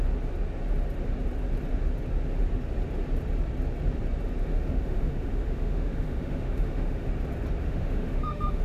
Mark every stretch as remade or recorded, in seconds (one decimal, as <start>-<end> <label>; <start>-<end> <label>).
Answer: 0.0-4.5 recorded; 4.5-7.1 remade; 7.1-7.6 recorded; 7.6-8.6 remade

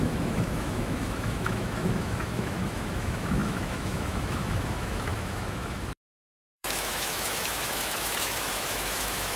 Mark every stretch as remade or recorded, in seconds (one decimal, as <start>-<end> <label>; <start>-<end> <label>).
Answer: 0.0-9.4 remade

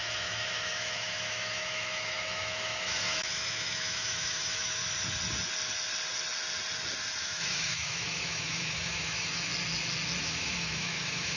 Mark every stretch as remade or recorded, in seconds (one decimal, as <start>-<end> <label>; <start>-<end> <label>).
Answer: 0.0-4.8 remade; 4.8-7.2 recorded; 7.2-9.5 remade; 9.5-10.2 recorded; 10.2-11.4 remade